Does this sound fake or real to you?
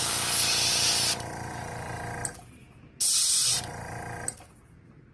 real